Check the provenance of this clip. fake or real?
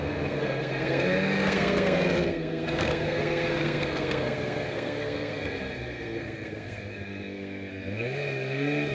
fake